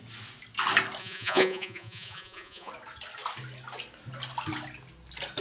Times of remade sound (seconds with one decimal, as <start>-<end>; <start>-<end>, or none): 1.0-2.7